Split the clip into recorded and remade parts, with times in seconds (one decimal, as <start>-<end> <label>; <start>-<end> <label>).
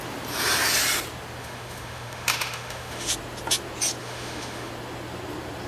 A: 0.0-1.4 recorded; 1.4-3.1 remade; 3.1-4.0 recorded; 4.0-4.7 remade; 4.7-5.7 recorded